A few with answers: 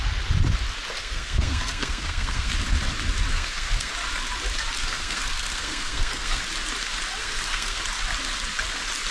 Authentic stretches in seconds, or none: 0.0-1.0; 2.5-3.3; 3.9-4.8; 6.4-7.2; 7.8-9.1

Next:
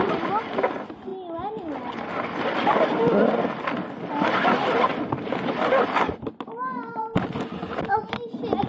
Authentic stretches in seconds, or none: 0.0-8.7

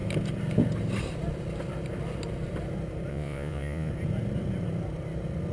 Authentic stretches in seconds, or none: 0.0-3.1; 3.9-5.5

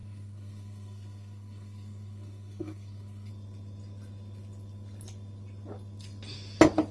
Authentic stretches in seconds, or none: 3.3-6.9